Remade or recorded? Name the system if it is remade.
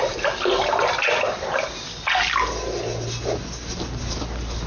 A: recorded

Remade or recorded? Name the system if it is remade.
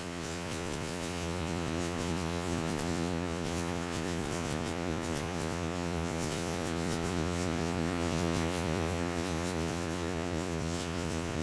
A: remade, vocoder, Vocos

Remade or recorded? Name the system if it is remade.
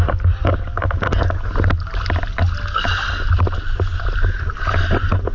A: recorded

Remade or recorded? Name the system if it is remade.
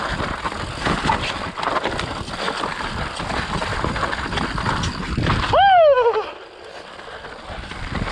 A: recorded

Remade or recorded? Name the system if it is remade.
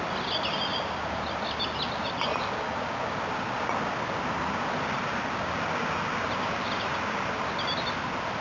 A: recorded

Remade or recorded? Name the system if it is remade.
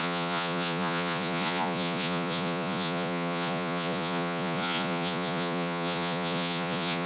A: remade, vocoder, Vocos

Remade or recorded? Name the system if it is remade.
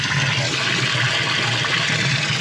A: recorded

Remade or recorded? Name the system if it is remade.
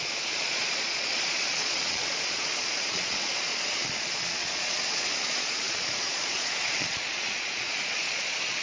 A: remade, vocoder, Vocos